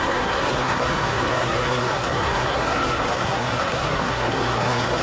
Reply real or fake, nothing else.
fake